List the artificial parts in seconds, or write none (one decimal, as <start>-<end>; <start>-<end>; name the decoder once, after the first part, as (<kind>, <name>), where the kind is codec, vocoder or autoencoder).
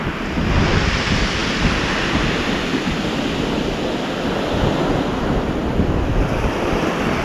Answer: none